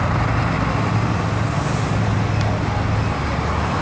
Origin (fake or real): real